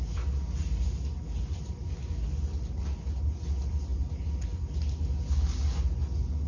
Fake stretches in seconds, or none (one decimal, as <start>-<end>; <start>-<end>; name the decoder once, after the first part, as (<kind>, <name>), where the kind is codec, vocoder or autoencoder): none